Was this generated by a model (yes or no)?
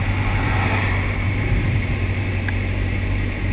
no